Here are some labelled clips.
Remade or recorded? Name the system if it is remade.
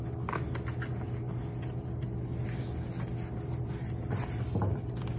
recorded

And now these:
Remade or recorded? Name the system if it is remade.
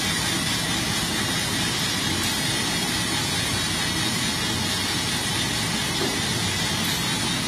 recorded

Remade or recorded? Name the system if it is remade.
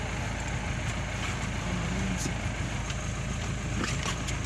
recorded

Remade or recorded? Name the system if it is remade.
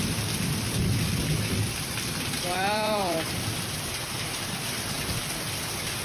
remade, vocoder, BigVGAN v2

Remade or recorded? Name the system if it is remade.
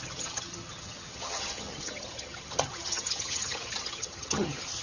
remade, vocoder, HiFi-GAN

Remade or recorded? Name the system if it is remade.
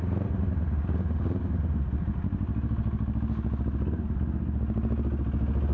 recorded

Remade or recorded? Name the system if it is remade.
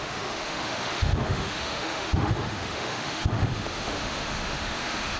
remade, autoencoder, DAC-VAE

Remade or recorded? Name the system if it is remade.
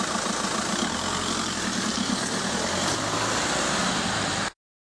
recorded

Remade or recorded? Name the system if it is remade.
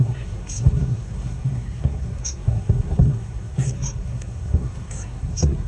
remade, codec, SNAC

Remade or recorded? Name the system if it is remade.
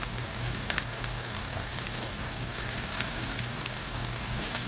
remade, codec, DAC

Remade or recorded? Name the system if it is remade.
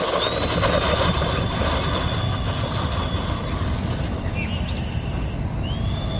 recorded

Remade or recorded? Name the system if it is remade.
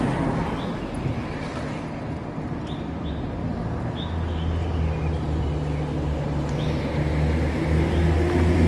recorded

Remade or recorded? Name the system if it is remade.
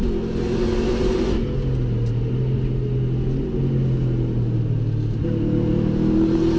recorded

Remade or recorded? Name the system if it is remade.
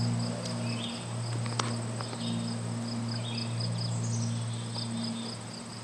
recorded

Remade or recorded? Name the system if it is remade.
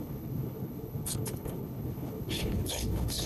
remade, codec, HILCodec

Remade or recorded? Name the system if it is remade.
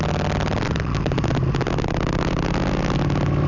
recorded